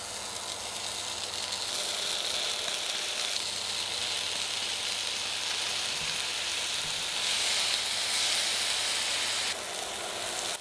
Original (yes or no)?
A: yes